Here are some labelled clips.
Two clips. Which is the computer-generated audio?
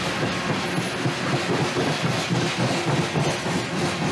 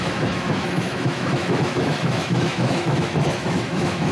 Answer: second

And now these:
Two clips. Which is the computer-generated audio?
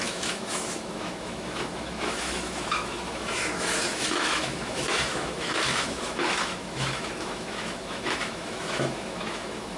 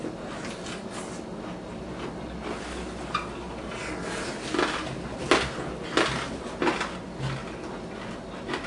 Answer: first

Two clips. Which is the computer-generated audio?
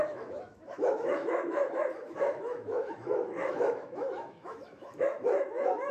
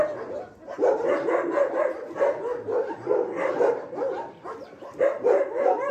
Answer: first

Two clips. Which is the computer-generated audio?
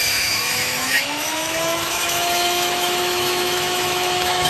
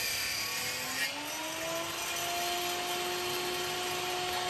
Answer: first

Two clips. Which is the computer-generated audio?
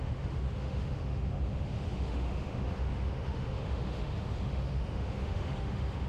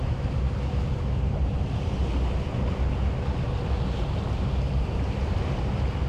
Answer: first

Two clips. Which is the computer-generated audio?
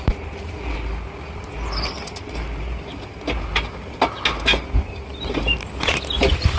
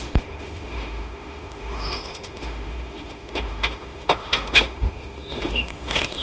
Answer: second